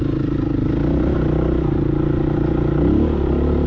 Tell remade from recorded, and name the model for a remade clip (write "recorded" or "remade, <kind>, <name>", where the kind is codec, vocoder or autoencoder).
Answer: recorded